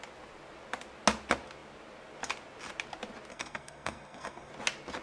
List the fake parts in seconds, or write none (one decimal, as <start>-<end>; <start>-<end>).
3.3-4.5